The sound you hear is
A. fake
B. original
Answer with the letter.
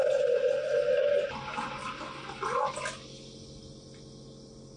B